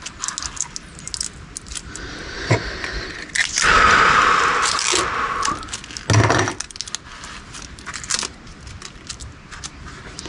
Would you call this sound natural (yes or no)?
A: yes